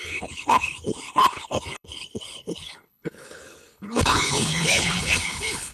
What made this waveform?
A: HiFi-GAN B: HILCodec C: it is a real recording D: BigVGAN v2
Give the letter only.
B